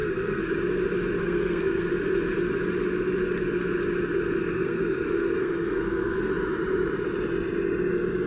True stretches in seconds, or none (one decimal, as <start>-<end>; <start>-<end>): 0.5-1.2; 1.9-4.4; 6.3-8.3